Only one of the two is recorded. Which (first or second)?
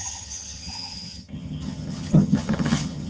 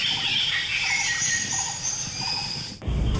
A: second